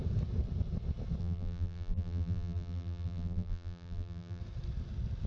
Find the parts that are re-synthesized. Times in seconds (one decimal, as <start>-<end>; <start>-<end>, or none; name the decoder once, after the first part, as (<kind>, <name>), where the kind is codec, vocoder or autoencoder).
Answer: 1.2-4.4 (vocoder, BigVGAN v2)